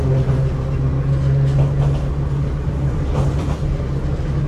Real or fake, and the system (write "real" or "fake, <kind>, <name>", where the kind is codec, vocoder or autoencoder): real